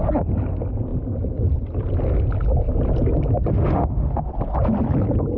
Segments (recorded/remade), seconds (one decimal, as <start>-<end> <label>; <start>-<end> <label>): 0.0-3.5 recorded; 3.5-4.3 remade; 4.3-5.4 recorded